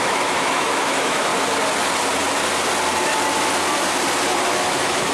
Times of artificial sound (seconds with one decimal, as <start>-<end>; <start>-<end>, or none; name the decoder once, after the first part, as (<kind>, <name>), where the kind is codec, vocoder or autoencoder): 0.0-1.3 (autoencoder, DAC-VAE); 4.4-5.1